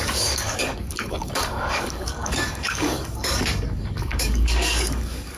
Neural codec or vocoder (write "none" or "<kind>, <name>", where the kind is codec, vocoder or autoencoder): codec, DAC